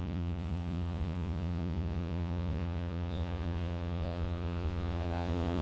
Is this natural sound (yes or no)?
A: no